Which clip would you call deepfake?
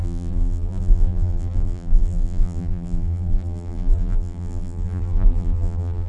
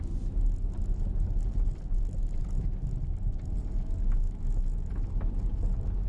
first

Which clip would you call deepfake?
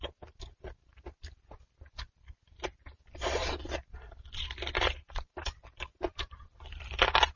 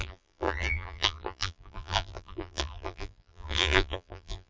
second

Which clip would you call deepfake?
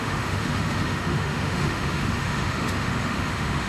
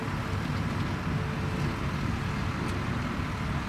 first